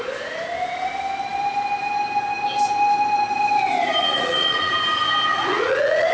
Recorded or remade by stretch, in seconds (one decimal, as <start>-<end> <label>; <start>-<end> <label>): 0.0-4.0 recorded; 4.0-4.7 remade; 4.7-5.3 recorded; 5.3-6.1 remade